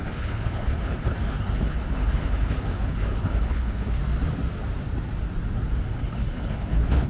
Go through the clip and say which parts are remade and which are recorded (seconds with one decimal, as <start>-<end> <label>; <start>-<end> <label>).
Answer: 0.0-4.0 remade; 4.0-5.9 recorded; 5.9-7.1 remade